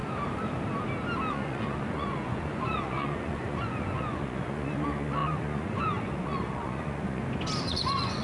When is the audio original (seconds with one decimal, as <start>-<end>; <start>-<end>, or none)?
0.0-1.3; 7.2-7.7